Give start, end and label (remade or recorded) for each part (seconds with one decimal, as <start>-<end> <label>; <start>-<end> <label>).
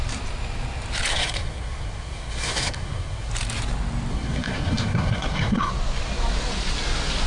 0.0-1.1 recorded; 1.1-3.3 remade; 3.3-4.1 recorded; 4.1-5.7 remade; 5.7-7.3 recorded